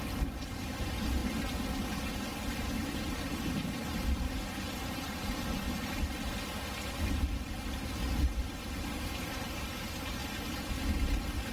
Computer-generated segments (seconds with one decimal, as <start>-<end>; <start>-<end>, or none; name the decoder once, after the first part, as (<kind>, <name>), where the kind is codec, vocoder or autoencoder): 0.0-1.2 (vocoder, BigVGAN v2); 1.8-10.2; 10.9-11.5